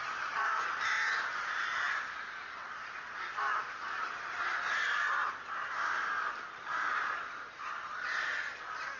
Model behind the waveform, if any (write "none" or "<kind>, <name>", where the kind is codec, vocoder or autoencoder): none